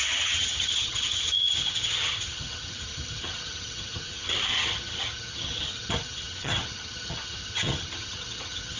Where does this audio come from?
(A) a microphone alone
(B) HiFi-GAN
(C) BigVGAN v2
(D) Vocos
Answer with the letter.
B